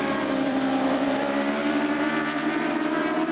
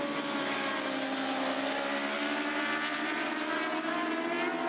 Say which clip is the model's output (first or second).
first